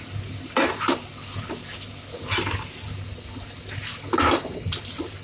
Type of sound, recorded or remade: recorded